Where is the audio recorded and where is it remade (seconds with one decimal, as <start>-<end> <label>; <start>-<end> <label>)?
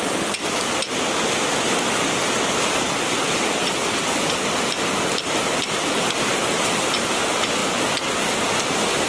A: 0.0-9.1 recorded